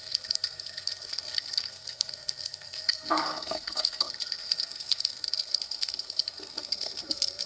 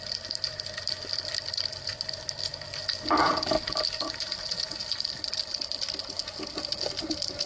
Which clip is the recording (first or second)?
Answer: second